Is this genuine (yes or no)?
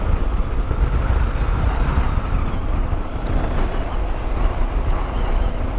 yes